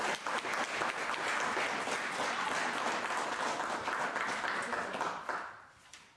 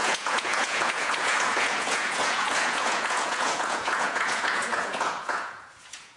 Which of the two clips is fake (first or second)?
second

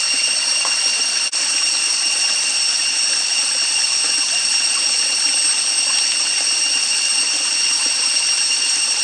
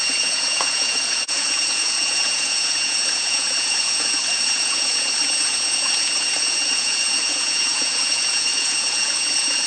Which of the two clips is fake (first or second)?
second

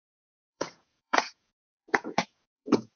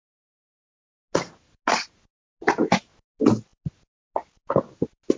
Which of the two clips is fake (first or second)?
first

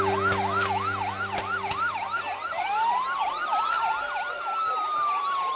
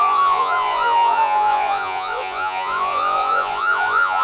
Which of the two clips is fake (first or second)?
second